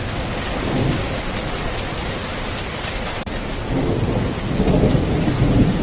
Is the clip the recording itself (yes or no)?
yes